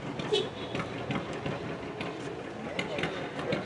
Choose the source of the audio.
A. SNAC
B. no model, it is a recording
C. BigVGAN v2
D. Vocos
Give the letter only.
B